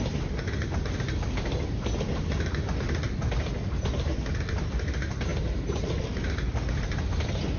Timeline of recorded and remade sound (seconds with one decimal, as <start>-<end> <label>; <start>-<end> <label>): 0.0-7.6 recorded